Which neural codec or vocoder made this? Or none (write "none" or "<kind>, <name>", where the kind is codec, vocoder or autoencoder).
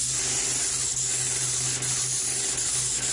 none